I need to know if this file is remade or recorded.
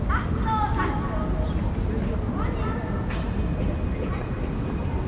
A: recorded